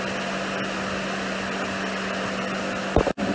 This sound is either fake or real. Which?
real